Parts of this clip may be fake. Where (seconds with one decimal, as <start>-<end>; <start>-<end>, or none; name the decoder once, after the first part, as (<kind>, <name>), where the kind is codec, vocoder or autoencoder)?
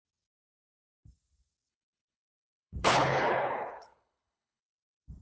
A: 1.7-4.6 (codec, HILCodec)